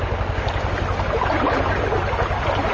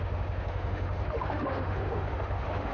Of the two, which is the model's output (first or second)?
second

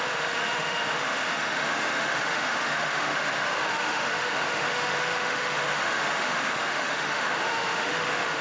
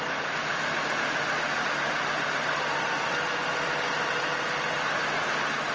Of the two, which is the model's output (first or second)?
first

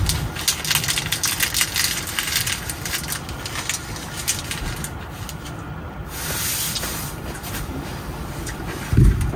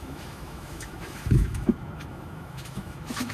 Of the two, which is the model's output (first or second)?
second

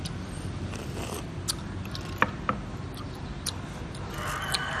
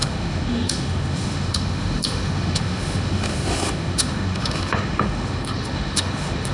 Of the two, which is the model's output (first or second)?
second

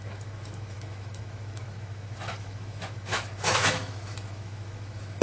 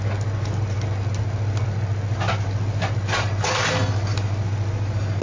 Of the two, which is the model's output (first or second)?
first